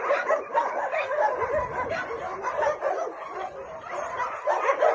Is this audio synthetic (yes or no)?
no